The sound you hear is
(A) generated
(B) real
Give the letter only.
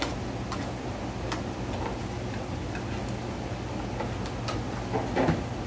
B